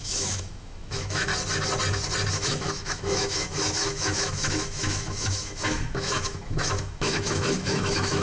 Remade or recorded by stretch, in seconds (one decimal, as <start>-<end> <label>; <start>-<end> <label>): 0.0-1.3 remade; 1.3-2.3 recorded; 2.3-8.2 remade